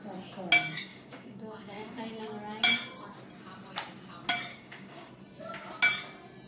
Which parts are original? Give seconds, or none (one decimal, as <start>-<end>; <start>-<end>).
0.0-0.9; 2.0-4.5; 5.1-6.5